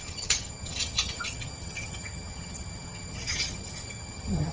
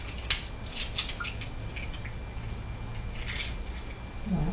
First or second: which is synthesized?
first